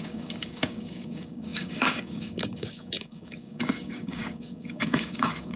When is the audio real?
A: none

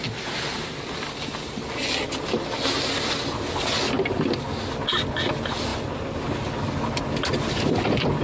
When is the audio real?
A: 0.0-8.2

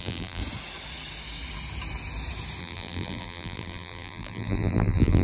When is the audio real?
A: 0.4-2.6

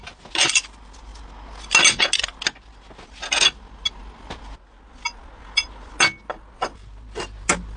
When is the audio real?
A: 0.0-7.8